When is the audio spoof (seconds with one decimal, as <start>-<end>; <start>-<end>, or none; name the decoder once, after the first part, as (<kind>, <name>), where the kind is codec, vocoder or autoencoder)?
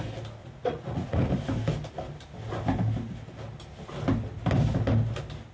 0.4-1.3 (vocoder, Vocos)